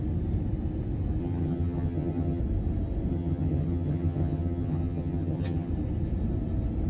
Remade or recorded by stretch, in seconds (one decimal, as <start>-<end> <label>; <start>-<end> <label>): 0.0-1.2 recorded; 1.2-2.4 remade; 2.4-3.1 recorded; 3.1-5.7 remade; 5.7-6.9 recorded